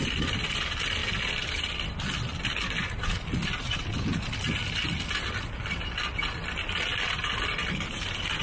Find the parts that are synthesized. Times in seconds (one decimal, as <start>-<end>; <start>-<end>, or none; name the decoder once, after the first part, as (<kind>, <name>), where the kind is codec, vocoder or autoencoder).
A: 6.9-8.4 (vocoder, BigVGAN v2)